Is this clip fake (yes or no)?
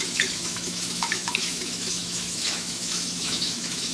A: yes